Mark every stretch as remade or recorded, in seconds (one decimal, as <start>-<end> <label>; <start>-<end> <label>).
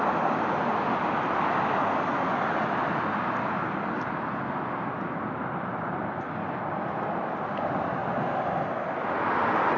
0.0-9.8 recorded